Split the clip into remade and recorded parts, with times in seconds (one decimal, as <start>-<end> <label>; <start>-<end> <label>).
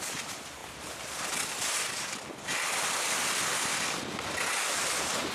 0.0-5.3 recorded